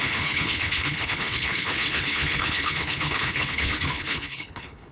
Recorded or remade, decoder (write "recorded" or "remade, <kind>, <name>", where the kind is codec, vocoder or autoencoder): remade, codec, HILCodec